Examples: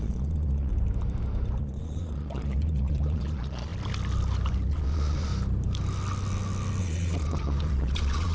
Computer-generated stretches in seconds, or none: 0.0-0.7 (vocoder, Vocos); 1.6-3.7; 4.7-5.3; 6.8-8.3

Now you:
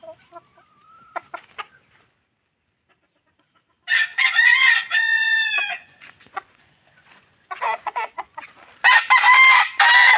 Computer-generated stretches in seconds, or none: 4.1-8.5 (vocoder, Vocos)

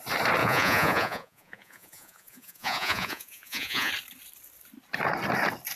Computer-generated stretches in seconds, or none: 0.4-3.9 (vocoder, Vocos)

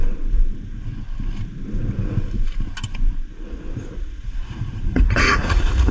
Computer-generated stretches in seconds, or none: 3.5-5.9 (vocoder, Vocos)

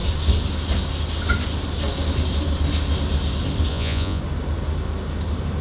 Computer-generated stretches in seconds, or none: 3.7-4.2 (vocoder, Vocos)